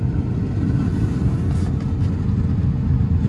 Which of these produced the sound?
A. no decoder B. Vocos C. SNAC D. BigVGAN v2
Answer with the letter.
A